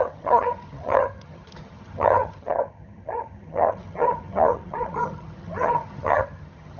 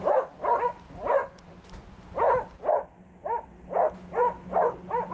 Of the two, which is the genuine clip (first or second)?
second